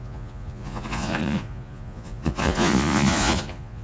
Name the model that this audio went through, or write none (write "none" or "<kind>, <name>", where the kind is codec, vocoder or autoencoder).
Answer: vocoder, Vocos